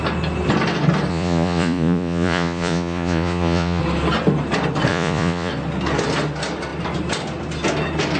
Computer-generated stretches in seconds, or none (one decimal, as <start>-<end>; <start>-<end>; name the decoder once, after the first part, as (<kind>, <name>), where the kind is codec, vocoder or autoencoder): 1.1-3.8 (vocoder, Vocos); 4.9-5.5